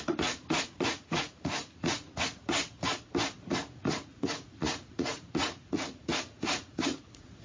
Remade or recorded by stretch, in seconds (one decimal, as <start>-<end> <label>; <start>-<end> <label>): 0.0-2.6 remade; 2.6-3.7 recorded; 3.7-7.4 remade